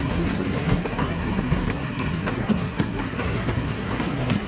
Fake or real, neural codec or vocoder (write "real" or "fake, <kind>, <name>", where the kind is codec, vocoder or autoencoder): fake, codec, SNAC